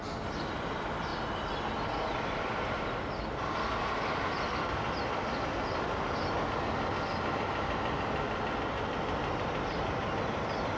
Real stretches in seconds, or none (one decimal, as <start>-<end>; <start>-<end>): 0.0-10.8